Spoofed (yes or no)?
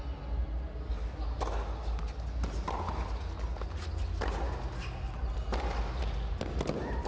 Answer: no